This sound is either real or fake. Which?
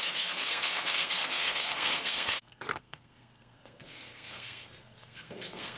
fake